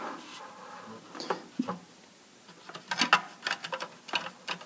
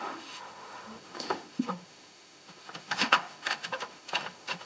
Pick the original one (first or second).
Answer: first